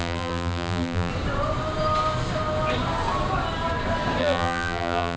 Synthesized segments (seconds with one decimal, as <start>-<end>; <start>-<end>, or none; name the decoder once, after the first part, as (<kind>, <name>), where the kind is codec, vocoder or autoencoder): 0.0-1.1 (vocoder, BigVGAN v2); 4.2-5.2